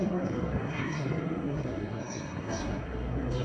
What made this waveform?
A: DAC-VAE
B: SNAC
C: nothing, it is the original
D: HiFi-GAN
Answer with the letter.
B